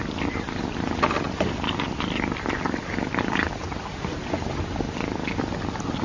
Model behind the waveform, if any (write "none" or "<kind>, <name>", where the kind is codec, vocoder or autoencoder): none